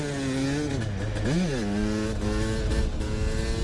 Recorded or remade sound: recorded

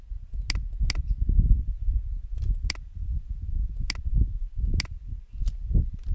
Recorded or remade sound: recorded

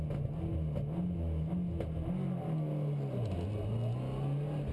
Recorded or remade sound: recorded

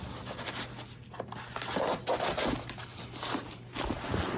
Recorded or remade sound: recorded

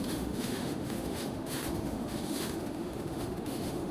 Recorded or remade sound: remade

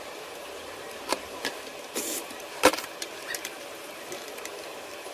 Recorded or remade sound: remade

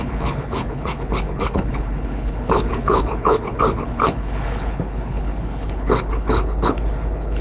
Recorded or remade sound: remade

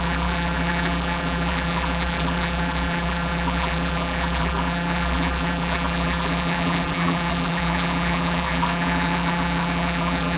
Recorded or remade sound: remade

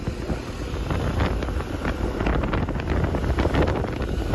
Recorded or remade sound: recorded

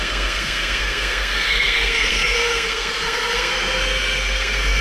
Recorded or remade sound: remade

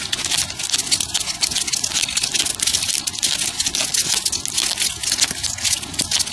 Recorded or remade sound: recorded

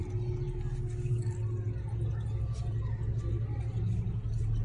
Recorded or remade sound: recorded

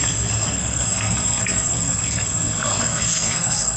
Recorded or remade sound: remade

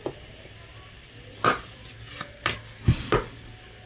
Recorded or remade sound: recorded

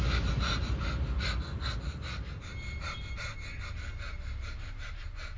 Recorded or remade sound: recorded